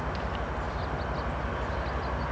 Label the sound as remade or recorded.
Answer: recorded